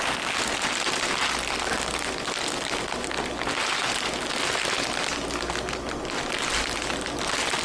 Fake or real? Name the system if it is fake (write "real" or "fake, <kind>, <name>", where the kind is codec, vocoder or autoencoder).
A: real